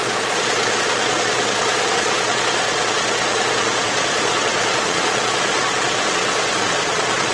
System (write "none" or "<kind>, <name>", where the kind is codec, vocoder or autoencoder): vocoder, Vocos